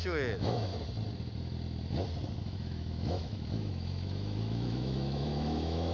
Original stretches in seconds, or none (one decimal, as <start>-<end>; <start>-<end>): 0.7-2.4